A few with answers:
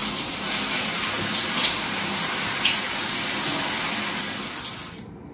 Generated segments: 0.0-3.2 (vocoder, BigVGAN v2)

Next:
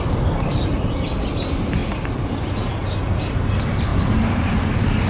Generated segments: 3.9-4.5 (vocoder, BigVGAN v2)

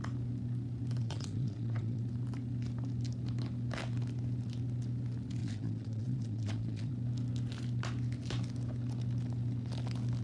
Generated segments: 1.0-2.0 (vocoder, Vocos); 5.4-6.9

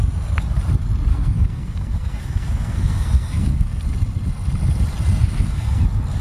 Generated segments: 1.1-3.8 (codec, SNAC); 5.1-5.8

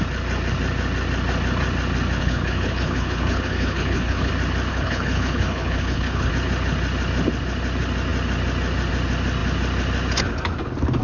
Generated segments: 2.2-4.3 (codec, HILCodec); 4.7-6.3